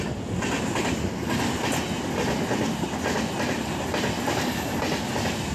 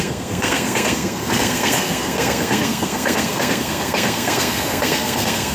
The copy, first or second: second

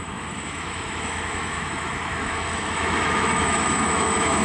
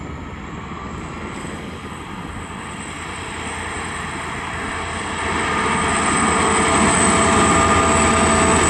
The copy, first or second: first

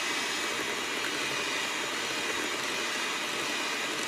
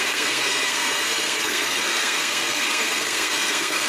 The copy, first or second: second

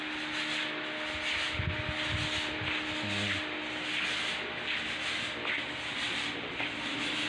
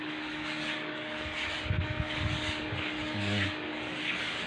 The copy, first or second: second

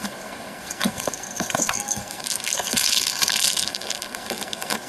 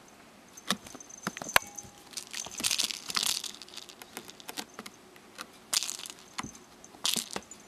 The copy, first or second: first